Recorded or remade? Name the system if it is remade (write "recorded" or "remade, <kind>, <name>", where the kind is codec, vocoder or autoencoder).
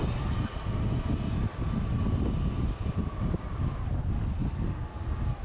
recorded